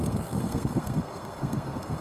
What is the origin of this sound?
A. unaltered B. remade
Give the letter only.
B